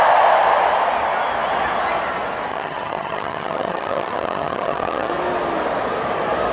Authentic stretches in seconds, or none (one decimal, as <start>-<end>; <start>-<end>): 0.0-2.5; 5.1-6.5

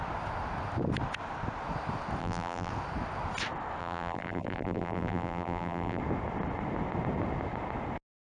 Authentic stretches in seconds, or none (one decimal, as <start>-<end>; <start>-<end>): 0.0-2.2; 2.7-3.8; 6.0-8.4

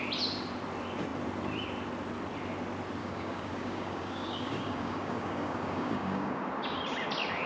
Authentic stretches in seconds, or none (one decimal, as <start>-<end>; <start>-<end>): 0.0-3.0; 6.4-7.5

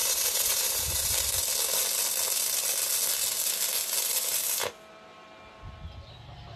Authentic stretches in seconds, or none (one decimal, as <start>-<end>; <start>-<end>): 1.4-6.6

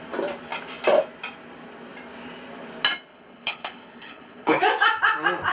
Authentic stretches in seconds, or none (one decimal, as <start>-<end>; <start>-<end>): 0.0-3.1; 4.6-5.5